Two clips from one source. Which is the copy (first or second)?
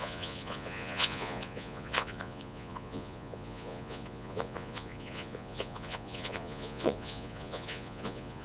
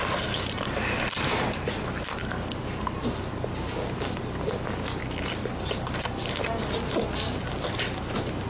first